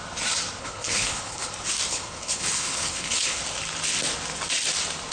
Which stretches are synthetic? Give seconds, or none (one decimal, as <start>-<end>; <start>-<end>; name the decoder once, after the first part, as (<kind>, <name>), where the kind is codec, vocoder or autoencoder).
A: 0.6-1.5 (codec, HILCodec); 1.9-3.4